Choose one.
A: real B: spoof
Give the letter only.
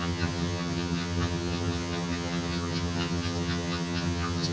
B